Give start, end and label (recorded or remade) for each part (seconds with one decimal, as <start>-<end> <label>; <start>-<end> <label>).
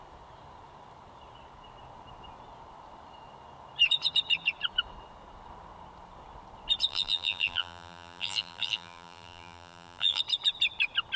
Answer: 0.0-6.9 recorded; 6.9-10.2 remade; 10.2-11.2 recorded